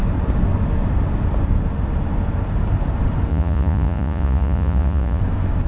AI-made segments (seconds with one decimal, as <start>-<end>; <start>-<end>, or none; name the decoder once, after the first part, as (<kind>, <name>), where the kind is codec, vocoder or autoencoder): 3.3-5.2 (vocoder, Vocos)